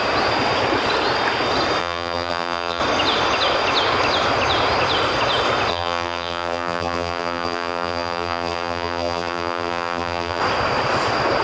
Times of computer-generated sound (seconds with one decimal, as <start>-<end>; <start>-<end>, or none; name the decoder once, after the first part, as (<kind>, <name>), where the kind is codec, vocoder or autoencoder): 1.8-2.8 (vocoder, BigVGAN v2); 5.7-10.4